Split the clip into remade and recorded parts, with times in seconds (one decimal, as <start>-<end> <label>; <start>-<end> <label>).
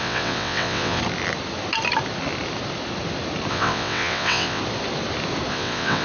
0.0-1.0 remade; 1.0-3.5 recorded; 3.5-4.6 remade; 4.6-5.5 recorded; 5.5-6.0 remade